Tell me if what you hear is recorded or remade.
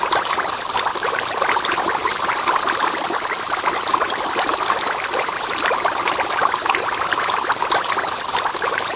remade